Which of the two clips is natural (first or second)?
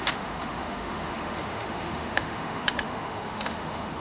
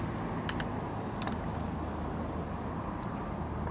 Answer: second